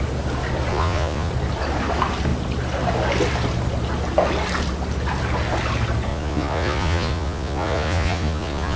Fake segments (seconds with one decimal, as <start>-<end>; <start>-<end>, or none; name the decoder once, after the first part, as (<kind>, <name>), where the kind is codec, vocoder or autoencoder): 0.7-1.3 (vocoder, Vocos); 6.1-8.8